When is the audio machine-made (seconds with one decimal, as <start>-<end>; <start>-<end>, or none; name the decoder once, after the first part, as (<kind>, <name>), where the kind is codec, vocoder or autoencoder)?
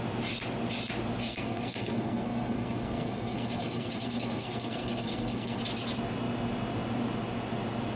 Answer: 1.2-5.6 (codec, SNAC)